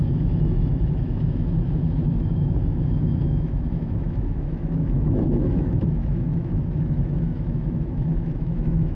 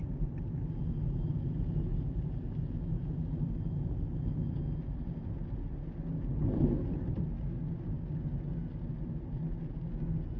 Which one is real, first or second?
second